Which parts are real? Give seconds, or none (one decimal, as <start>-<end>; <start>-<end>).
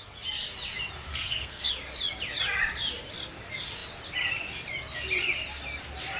0.0-1.1; 1.7-6.2